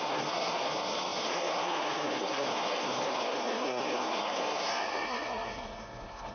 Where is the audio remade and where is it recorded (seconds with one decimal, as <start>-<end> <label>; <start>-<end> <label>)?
0.0-6.3 remade